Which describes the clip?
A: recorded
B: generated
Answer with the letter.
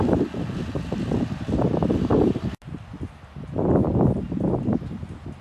A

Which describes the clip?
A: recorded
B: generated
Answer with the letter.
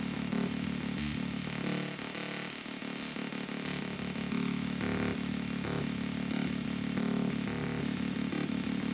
A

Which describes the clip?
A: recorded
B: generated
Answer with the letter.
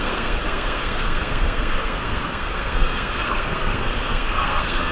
B